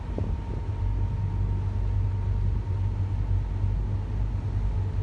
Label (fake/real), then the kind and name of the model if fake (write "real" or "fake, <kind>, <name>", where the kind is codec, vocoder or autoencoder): real